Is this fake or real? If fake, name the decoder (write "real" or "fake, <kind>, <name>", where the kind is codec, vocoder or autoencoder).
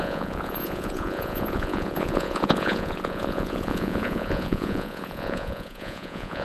fake, vocoder, Vocos